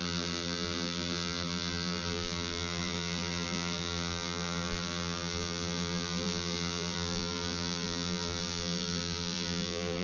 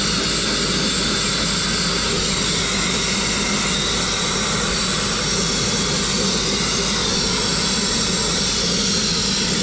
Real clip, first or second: second